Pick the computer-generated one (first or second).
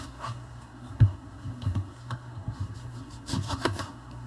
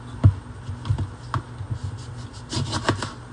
first